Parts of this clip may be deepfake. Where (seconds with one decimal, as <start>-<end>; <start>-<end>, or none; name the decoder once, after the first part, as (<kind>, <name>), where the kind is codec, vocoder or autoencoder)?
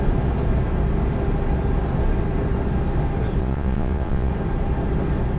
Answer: 3.4-4.3 (vocoder, Vocos)